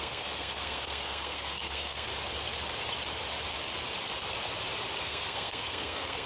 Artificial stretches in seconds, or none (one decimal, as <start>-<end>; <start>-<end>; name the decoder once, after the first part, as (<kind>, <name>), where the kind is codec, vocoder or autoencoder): 0.0-2.1 (codec, SNAC); 5.0-6.3